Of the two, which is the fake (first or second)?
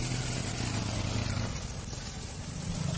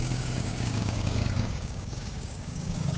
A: second